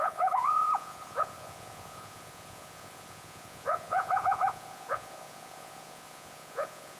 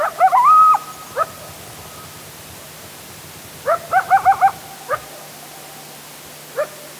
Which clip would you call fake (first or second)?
first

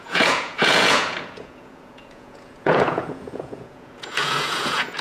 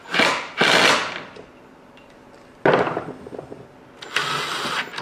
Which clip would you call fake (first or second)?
first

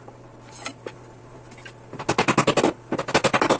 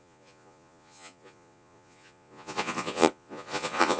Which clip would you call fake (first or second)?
second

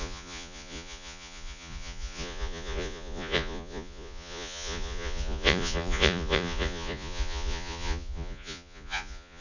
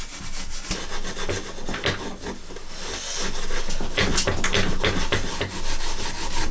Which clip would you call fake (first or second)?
first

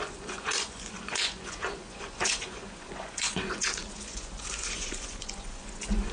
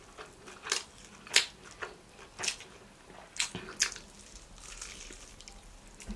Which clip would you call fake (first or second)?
first